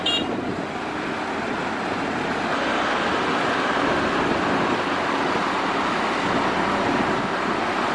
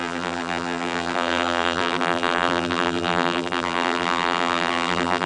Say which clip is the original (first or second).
first